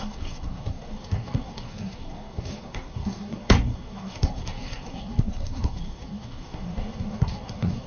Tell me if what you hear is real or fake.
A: fake